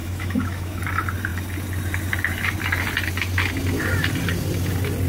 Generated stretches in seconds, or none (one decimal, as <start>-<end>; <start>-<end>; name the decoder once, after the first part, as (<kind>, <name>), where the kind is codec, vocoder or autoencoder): 0.0-0.8 (autoencoder, DAC-VAE)